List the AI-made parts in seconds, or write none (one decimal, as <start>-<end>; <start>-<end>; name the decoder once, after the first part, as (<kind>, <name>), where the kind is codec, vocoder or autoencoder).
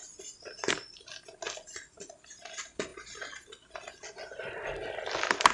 none